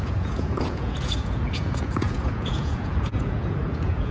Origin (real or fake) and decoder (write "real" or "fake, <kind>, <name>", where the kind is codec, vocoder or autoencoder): fake, vocoder, Vocos